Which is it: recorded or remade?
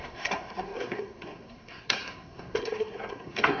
remade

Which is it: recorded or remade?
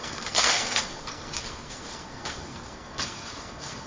remade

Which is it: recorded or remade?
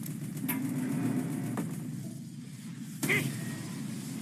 recorded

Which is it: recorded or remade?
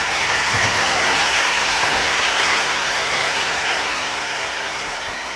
remade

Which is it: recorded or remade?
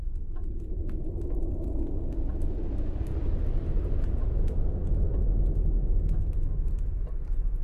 recorded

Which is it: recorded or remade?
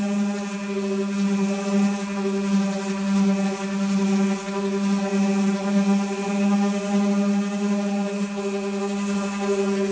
recorded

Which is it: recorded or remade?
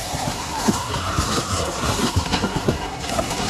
remade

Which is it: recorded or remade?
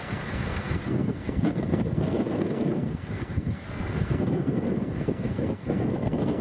remade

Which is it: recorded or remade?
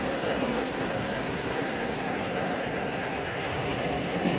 remade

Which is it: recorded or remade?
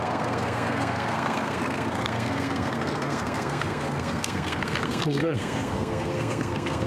remade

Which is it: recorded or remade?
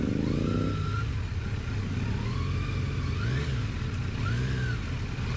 recorded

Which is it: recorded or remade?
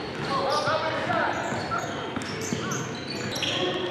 recorded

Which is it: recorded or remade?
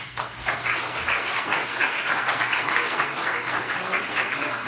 remade